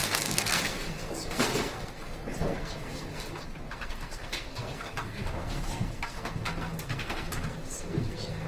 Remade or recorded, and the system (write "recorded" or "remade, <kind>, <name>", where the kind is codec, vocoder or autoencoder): remade, codec, SNAC